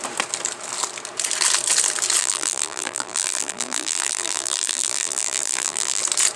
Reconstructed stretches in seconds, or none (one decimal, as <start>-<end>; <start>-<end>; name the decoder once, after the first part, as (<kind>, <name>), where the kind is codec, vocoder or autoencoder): 2.2-6.0 (vocoder, BigVGAN v2)